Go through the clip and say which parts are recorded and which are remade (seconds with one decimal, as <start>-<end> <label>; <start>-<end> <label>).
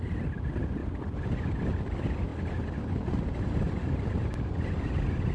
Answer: 0.0-5.3 recorded